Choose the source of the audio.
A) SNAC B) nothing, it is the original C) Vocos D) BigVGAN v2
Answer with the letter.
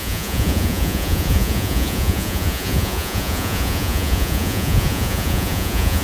C